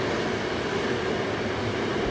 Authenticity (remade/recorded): recorded